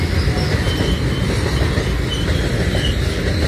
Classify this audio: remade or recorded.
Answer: recorded